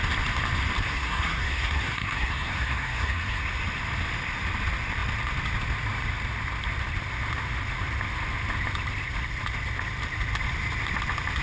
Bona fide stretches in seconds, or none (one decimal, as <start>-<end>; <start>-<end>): 0.0-0.8; 3.4-11.4